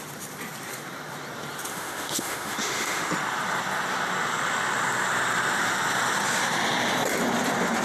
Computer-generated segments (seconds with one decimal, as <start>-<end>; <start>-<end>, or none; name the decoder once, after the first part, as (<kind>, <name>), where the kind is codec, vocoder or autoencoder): 1.7-3.1 (autoencoder, DAC-VAE)